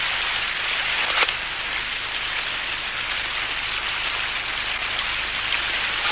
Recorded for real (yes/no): yes